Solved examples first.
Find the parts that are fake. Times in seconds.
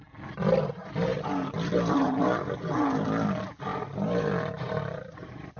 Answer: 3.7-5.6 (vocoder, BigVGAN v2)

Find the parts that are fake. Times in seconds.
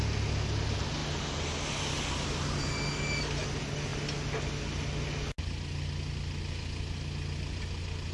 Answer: none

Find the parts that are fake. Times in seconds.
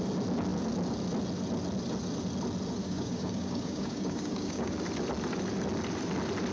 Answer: 2.8-4.7 (codec, DAC)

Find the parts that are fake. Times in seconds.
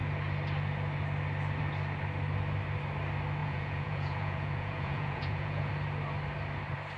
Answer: 3.4-5.7 (vocoder, Vocos)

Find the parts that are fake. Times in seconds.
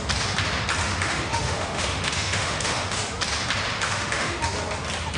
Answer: 0.8-3.0 (autoencoder, DAC-VAE); 3.7-4.4